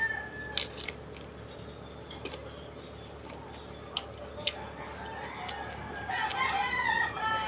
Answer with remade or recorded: recorded